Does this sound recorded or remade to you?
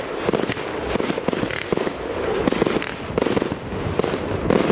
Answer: recorded